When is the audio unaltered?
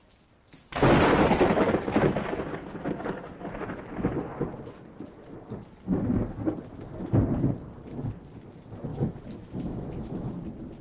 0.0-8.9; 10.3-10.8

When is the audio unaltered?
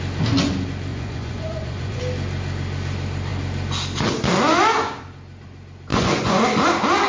0.0-0.9; 2.0-5.9; 6.4-7.1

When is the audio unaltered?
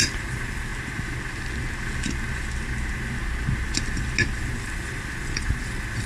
0.7-4.4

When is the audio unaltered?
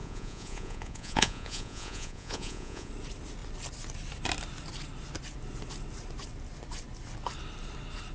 2.9-8.1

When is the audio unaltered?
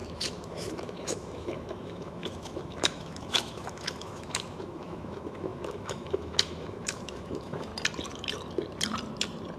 7.7-9.6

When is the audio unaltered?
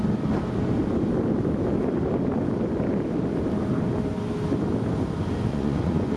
0.0-5.5